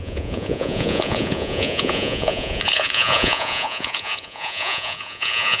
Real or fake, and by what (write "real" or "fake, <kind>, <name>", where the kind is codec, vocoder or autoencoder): fake, vocoder, Vocos